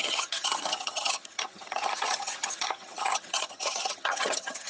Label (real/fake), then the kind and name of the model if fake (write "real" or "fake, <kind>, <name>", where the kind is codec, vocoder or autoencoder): fake, vocoder, HiFi-GAN